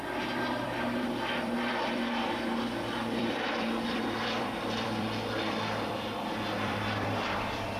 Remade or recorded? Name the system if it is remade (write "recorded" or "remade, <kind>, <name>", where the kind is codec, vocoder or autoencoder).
remade, vocoder, BigVGAN v2